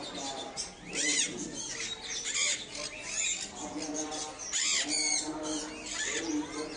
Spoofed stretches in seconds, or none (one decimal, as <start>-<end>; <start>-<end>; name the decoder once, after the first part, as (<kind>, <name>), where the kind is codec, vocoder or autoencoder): none